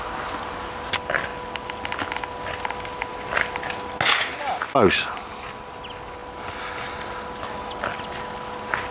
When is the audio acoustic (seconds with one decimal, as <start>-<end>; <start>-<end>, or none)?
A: 0.0-8.9